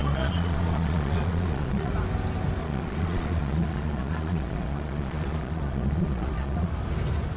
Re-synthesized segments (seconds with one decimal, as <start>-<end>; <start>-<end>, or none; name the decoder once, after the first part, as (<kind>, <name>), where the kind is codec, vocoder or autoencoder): 0.0-1.9 (vocoder, Vocos); 2.6-6.7